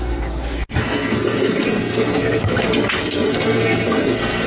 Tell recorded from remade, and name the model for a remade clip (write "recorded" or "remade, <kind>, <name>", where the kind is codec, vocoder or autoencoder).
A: remade, codec, SNAC